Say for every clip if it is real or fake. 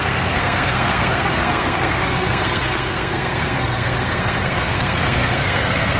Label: fake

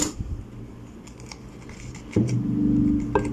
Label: real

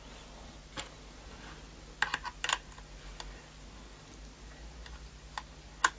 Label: real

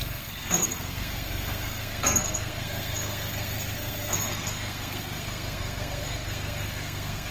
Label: fake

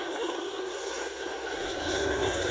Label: fake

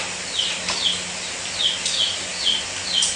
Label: real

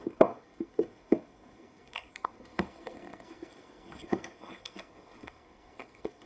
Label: fake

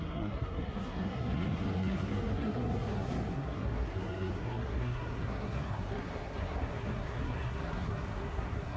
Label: fake